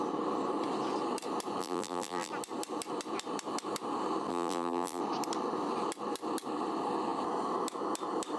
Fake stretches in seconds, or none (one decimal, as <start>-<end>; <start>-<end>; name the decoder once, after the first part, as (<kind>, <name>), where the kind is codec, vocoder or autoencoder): 1.6-2.3 (vocoder, BigVGAN v2); 4.3-5.0